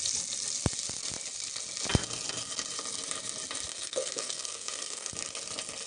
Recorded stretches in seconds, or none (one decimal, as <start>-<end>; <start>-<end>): 0.0-3.7; 5.1-5.9